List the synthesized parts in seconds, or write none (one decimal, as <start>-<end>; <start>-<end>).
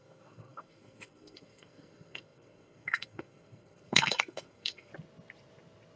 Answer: 0.0-4.9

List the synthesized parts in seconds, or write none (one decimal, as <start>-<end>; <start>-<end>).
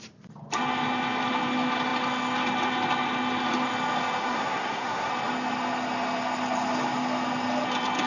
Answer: 4.2-5.1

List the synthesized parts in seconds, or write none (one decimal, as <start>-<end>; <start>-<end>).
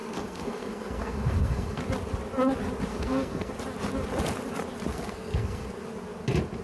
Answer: 0.0-1.8; 2.9-3.5; 4.9-5.7